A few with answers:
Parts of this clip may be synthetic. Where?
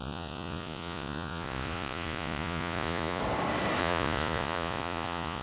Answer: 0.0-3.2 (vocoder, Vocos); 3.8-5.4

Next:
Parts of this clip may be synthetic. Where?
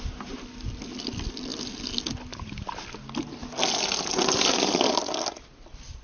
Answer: none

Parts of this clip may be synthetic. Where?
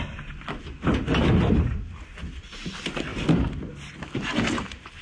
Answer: none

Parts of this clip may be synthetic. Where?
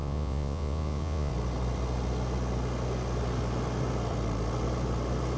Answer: 0.0-1.3 (vocoder, Vocos)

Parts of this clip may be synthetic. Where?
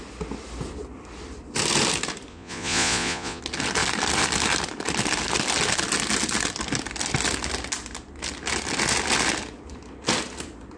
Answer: 2.3-3.4 (vocoder, Vocos)